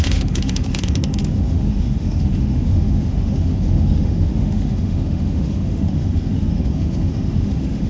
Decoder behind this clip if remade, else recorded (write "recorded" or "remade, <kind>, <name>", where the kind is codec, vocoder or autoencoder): remade, autoencoder, DAC-VAE